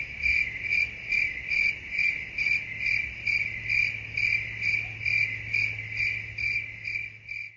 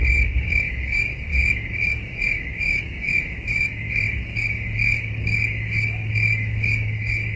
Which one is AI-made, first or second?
second